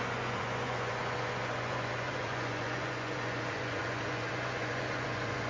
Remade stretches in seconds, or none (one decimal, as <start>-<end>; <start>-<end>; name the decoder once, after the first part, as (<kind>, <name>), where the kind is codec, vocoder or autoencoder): 0.0-5.5 (vocoder, Vocos)